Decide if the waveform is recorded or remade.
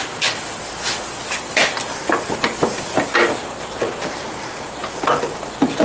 remade